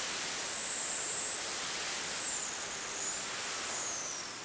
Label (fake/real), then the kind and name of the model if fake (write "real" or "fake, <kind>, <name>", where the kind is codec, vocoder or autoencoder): real